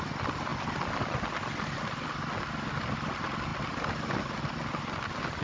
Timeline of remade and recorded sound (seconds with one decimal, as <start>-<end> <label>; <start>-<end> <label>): 0.0-5.4 recorded